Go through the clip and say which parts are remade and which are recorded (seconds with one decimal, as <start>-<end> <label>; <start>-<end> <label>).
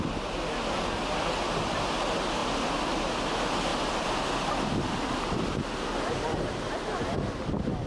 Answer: 0.0-2.4 recorded; 2.4-3.2 remade; 3.2-3.7 recorded; 3.7-5.6 remade; 5.6-7.9 recorded